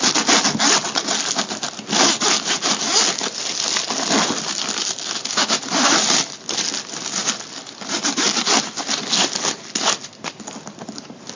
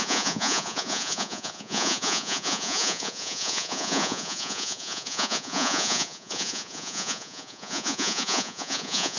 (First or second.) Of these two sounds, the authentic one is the first